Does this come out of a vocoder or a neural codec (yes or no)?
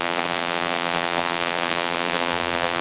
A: yes